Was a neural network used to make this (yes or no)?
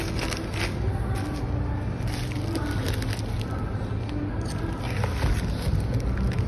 no